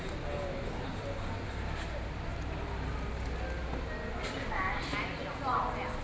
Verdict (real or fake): real